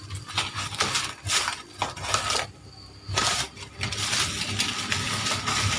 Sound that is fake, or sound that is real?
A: real